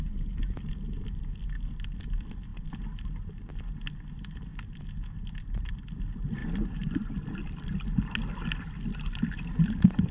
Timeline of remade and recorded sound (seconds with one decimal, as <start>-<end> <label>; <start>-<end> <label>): 0.0-10.1 recorded

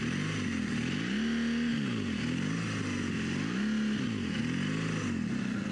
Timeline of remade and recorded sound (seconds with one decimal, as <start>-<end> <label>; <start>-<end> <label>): 0.0-5.7 recorded

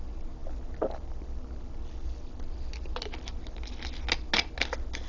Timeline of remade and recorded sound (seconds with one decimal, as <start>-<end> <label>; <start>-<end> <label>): 0.0-5.1 recorded

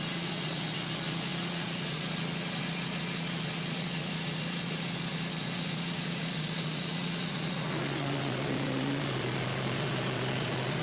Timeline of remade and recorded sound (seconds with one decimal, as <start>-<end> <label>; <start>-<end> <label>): 0.0-10.8 remade

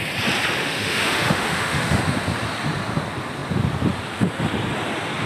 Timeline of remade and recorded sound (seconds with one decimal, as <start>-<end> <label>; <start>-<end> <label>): 0.0-0.6 recorded; 0.6-2.0 remade; 2.0-5.3 recorded

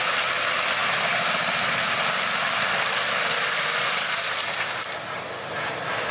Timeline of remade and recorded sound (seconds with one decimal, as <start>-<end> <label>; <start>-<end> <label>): 0.0-6.1 recorded

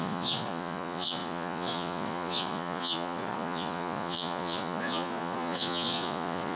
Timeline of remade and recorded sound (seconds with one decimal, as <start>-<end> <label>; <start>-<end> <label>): 0.0-6.6 remade

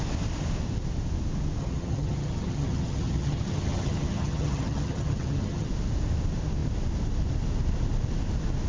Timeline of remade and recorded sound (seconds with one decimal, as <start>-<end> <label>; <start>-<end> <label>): 0.0-1.6 recorded; 1.6-5.7 remade; 5.7-8.7 recorded